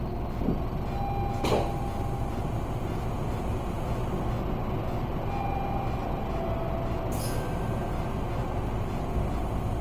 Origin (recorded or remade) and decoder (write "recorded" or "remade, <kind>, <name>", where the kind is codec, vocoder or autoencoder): recorded